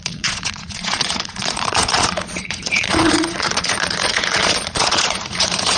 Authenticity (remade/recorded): remade